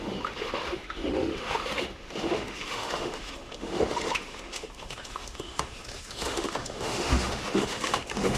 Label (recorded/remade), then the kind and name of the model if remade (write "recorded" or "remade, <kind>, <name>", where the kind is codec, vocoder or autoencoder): remade, autoencoder, DAC-VAE